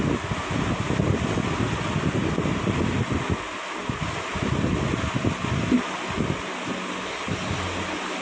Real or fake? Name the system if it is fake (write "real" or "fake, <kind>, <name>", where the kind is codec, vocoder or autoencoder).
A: real